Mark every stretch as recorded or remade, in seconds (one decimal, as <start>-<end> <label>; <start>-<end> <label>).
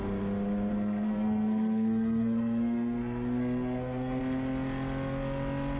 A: 0.0-0.7 recorded; 0.7-4.2 remade; 4.2-5.8 recorded